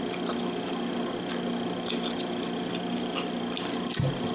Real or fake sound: real